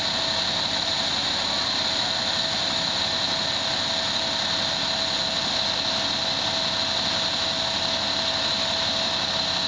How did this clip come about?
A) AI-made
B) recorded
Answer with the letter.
B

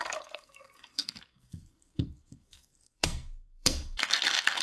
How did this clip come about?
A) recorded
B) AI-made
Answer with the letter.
B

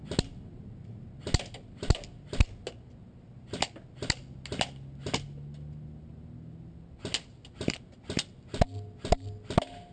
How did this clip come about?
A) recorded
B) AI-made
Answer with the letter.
A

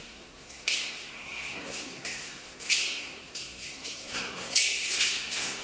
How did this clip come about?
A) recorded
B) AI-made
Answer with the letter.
B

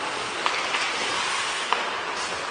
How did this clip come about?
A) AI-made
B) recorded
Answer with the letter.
B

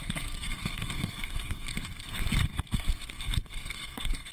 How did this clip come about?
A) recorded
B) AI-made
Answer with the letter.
B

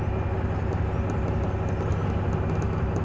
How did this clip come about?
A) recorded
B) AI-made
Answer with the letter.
A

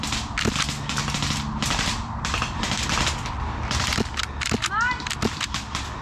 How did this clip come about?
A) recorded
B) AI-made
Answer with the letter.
A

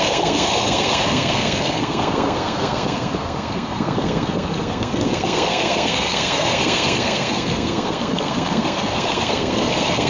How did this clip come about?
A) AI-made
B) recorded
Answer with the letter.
A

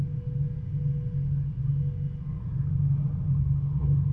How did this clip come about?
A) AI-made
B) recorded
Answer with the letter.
B